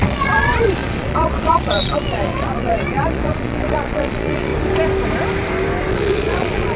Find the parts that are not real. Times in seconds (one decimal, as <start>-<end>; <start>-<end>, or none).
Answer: 0.0-4.5; 5.9-6.8